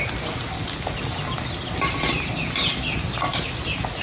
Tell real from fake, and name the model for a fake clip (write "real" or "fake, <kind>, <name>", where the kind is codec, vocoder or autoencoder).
real